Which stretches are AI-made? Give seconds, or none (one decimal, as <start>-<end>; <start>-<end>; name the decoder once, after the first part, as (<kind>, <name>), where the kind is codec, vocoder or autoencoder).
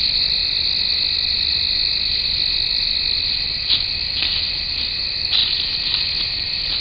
none